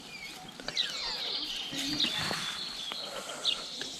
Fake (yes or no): no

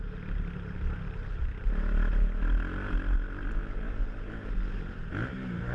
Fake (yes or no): no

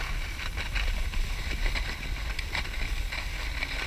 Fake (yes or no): no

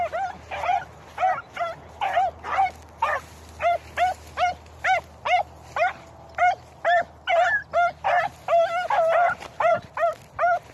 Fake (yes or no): no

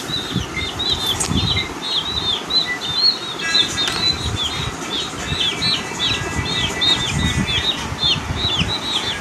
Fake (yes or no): no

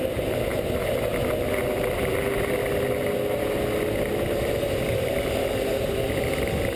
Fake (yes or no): no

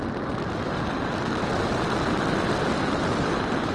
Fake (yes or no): no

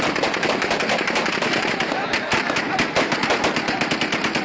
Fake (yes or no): yes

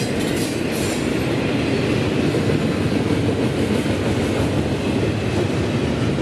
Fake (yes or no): no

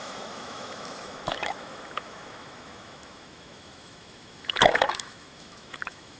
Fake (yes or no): yes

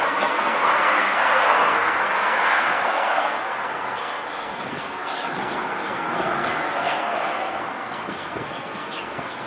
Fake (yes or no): yes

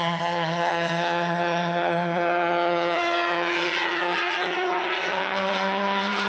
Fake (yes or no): yes